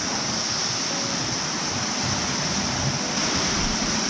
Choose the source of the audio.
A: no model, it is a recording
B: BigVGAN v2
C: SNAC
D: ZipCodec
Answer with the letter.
A